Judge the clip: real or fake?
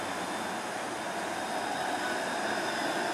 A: real